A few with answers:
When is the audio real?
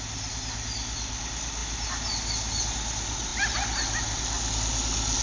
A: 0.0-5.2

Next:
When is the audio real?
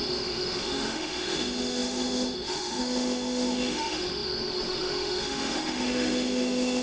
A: none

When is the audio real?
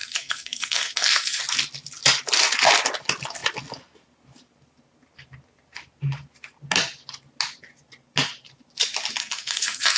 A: 1.4-9.2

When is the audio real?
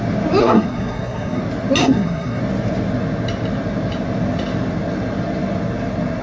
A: 0.0-0.4; 1.4-1.8; 2.4-6.2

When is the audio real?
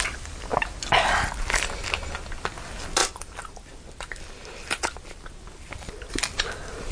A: 0.0-6.9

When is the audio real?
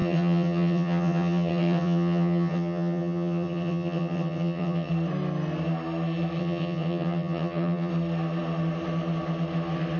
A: 4.9-6.4; 7.9-10.0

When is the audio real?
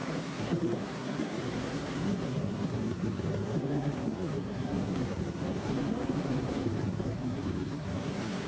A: none